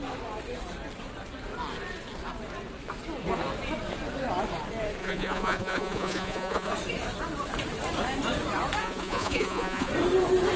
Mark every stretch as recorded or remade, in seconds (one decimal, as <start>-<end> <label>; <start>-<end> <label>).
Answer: 0.0-5.0 recorded; 5.0-6.7 remade; 6.7-8.8 recorded; 8.8-9.9 remade; 9.9-10.6 recorded